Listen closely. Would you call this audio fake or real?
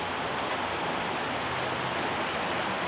real